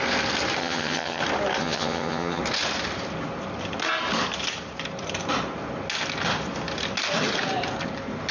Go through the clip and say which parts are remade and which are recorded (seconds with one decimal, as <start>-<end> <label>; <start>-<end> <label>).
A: 0.0-0.6 recorded; 0.6-1.2 remade; 1.2-1.6 recorded; 1.6-2.4 remade; 2.4-8.3 recorded